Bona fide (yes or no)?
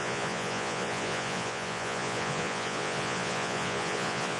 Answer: no